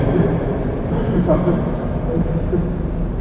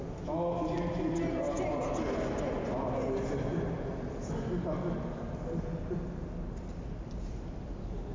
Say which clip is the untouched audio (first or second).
second